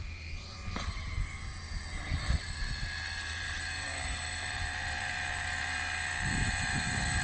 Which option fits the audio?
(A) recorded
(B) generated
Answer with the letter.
B